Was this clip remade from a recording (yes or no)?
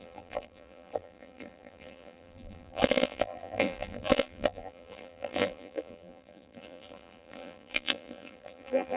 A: yes